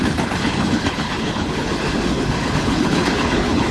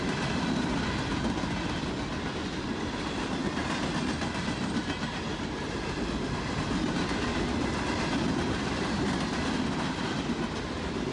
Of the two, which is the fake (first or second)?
first